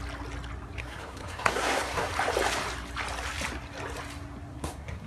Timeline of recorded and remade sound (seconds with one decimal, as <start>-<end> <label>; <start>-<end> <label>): 0.0-0.8 recorded; 0.8-2.1 remade; 2.1-4.5 recorded; 4.5-5.1 remade